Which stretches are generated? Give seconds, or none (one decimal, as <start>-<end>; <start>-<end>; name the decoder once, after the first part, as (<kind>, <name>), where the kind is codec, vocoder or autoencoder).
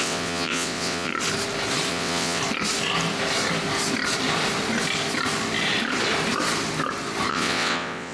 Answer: 0.0-1.1 (vocoder, WaveNeXt); 1.9-2.4; 7.3-8.1